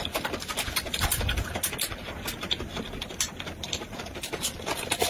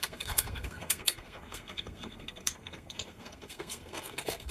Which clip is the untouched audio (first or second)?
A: first